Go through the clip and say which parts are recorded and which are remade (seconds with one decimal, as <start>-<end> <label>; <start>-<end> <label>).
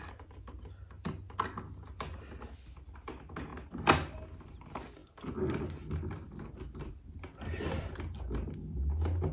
0.0-9.3 recorded